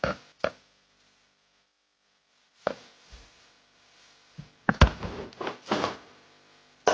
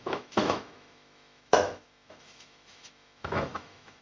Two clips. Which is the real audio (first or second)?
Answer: first